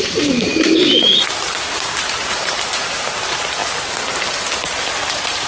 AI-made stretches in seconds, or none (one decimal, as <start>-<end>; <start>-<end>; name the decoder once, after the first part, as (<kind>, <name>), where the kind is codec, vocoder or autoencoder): 0.0-0.5 (vocoder, BigVGAN v2); 1.0-3.6; 5.1-5.5